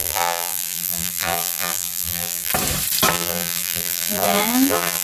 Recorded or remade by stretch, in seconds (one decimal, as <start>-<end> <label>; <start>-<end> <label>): 0.0-2.5 remade; 2.5-3.1 recorded; 3.1-5.0 remade